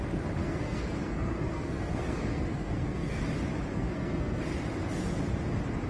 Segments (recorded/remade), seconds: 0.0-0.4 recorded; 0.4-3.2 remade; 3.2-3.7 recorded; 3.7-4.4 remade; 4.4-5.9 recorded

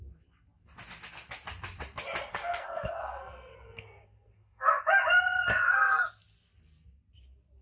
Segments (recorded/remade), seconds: 0.0-2.3 recorded; 2.3-4.8 remade; 4.8-7.6 recorded

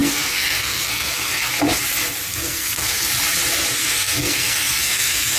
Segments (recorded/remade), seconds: 0.0-1.5 remade; 1.5-2.3 recorded; 2.3-3.1 remade; 3.1-3.8 recorded; 3.8-5.4 remade

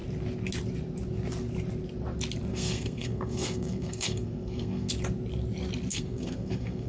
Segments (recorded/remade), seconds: 0.0-2.5 recorded; 2.5-4.9 remade; 4.9-5.9 recorded; 5.9-6.9 remade